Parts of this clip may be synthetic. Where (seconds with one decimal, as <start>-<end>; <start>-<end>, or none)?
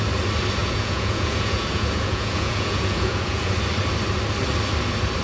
0.6-3.5